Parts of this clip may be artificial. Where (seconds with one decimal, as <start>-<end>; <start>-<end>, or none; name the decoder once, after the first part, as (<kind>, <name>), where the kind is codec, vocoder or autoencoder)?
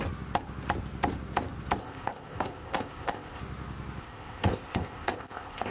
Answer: 1.8-3.4 (codec, ZipCodec); 4.0-5.7